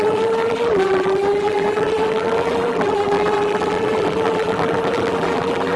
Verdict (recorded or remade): remade